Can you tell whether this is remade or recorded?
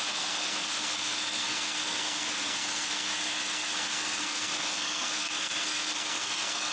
remade